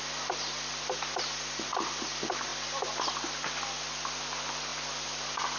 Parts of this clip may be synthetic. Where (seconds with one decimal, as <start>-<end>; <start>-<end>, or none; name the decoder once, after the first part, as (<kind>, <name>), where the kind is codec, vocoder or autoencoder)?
none